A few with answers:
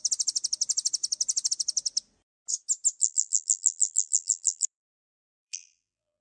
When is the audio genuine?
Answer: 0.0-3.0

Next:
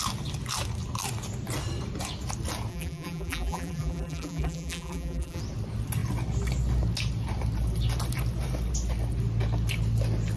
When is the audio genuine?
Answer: 0.0-2.7; 5.4-10.4

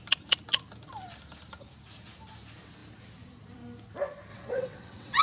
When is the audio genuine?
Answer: 0.0-4.3

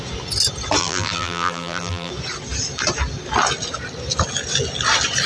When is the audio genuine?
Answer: 0.0-0.8; 2.1-5.3

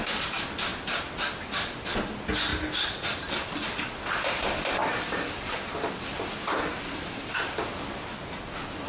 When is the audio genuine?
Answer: 0.0-2.5; 3.9-8.9

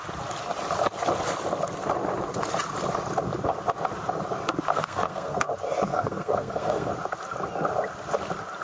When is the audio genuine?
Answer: 0.0-4.7; 5.5-5.9; 6.9-8.6

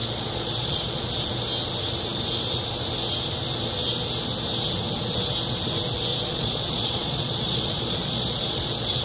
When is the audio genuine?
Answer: 1.1-6.1

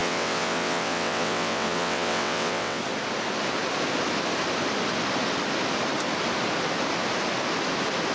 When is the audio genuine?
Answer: 2.8-8.1